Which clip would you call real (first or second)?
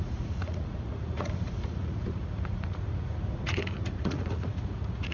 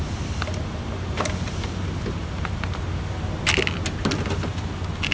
second